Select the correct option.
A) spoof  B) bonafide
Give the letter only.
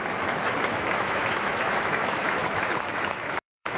A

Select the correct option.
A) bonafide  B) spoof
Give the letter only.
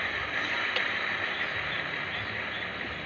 A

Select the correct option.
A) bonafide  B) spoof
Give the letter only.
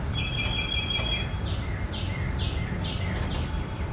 A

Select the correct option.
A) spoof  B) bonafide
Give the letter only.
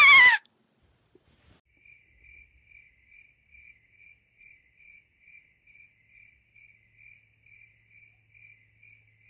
B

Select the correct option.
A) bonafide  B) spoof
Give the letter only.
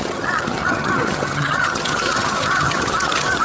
B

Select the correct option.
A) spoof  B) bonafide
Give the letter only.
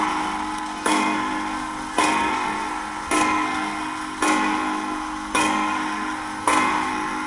A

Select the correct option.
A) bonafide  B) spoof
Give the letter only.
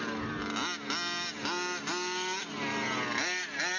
A